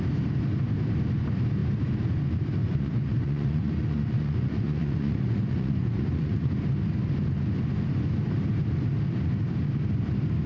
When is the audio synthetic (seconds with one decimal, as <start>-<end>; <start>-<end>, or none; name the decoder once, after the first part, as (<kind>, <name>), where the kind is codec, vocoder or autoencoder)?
2.6-6.5 (vocoder, Vocos)